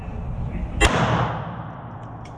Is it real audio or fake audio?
fake